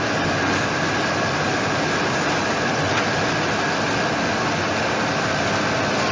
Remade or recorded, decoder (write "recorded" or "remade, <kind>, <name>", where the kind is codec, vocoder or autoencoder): recorded